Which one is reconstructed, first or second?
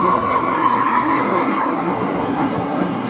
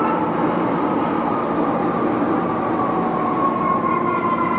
first